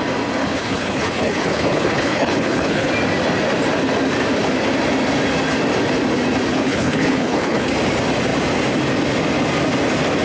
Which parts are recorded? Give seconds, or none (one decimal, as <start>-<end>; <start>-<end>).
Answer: 0.0-0.4; 2.9-6.5; 7.7-10.2